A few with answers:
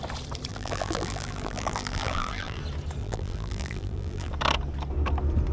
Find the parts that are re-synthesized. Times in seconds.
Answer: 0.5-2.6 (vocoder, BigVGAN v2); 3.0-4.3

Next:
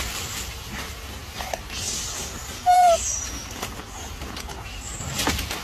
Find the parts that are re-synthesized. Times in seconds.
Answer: none

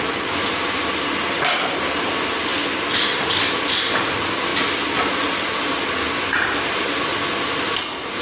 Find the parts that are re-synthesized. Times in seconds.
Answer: 0.0-2.5 (vocoder, BigVGAN v2); 3.2-7.1

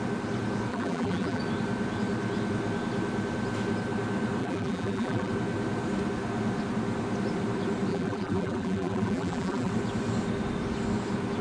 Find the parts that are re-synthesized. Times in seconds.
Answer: 0.7-1.4 (vocoder, BigVGAN v2); 4.4-5.3; 7.9-9.7

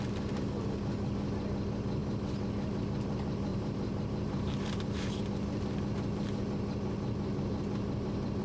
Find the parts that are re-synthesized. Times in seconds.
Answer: 3.5-5.2 (vocoder, BigVGAN v2)

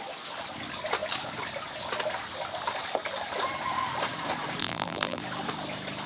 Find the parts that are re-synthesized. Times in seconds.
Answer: 4.6-5.2 (vocoder, BigVGAN v2)

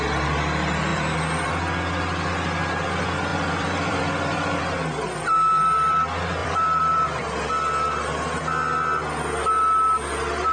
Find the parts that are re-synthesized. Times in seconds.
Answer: 0.9-1.5 (vocoder, BigVGAN v2); 3.3-4.6; 6.4-7.1